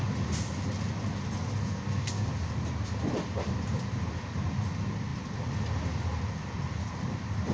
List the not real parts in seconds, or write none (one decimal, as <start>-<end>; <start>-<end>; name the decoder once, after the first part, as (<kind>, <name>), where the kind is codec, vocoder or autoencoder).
1.6-2.3 (codec, SNAC)